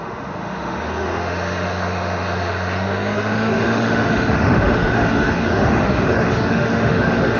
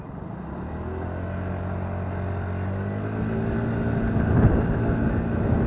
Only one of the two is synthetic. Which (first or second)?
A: first